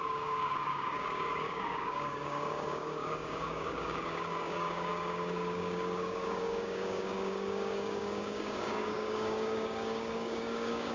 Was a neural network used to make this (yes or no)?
yes